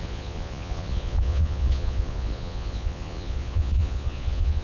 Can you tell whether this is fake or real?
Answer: fake